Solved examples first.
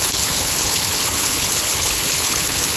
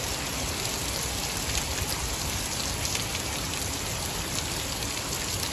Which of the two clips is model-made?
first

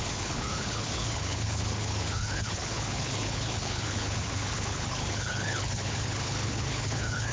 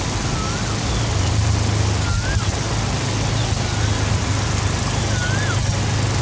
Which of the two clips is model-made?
first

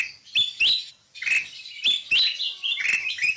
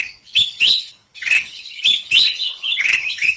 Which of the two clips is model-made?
second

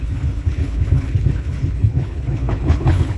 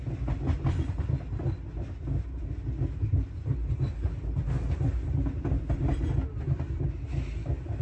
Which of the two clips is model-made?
first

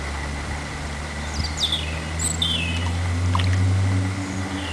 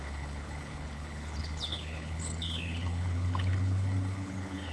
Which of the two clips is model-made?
second